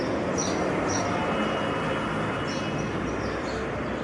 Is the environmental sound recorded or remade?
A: recorded